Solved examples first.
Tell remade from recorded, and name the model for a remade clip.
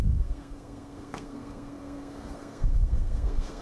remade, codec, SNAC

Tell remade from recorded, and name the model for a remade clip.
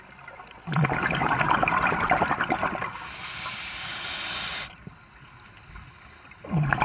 recorded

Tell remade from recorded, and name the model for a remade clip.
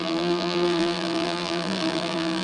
remade, vocoder, BigVGAN v2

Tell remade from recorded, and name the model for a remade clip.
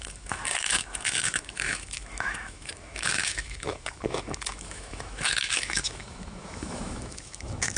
remade, autoencoder, DAC-VAE